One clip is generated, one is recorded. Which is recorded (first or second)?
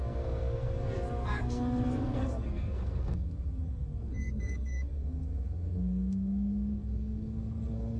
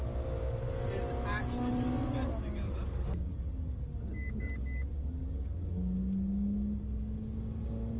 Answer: second